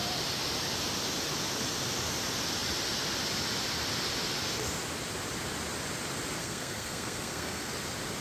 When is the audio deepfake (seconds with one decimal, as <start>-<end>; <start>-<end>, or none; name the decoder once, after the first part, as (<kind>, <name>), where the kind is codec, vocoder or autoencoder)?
6.4-7.7 (codec, SNAC)